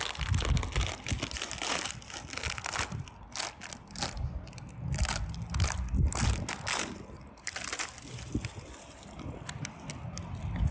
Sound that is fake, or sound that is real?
real